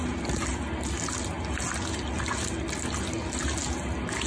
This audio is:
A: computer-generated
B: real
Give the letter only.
B